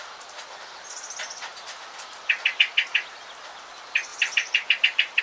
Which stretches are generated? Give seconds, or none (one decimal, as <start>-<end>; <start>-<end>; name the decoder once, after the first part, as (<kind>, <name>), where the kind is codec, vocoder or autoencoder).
4.1-5.2 (vocoder, BigVGAN v2)